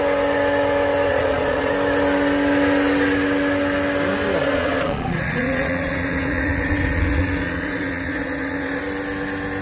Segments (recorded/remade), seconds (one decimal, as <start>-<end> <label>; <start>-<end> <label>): 0.0-1.1 recorded; 1.1-1.7 remade; 1.7-4.4 recorded; 4.4-8.8 remade; 8.8-9.6 recorded